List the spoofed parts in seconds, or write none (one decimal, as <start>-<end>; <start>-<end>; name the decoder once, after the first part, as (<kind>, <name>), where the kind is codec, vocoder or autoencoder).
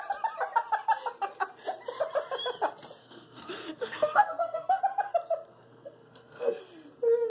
3.0-4.8 (codec, SNAC); 5.5-6.6